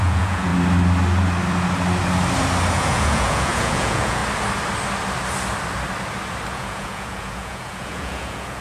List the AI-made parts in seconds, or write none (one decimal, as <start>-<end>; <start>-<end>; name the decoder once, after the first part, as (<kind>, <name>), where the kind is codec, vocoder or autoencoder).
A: 0.0-0.5 (vocoder, Vocos); 2.7-4.2; 6.5-8.6

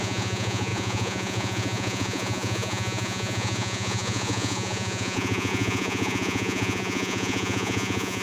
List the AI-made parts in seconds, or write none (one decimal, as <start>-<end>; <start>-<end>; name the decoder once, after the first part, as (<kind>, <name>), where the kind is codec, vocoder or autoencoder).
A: 0.0-8.2 (vocoder, Vocos)